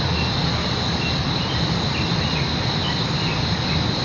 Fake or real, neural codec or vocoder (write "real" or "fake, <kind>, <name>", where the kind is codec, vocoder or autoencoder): real